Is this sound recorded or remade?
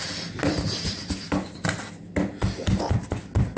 recorded